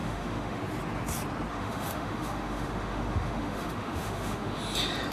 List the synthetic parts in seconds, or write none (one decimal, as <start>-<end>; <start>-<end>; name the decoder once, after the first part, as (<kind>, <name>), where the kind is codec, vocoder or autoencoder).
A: 0.0-0.6 (autoencoder, DAC-VAE); 1.5-4.6